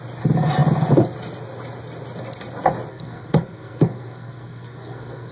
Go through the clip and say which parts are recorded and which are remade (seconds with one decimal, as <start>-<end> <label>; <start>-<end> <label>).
0.0-2.9 recorded; 2.9-5.3 remade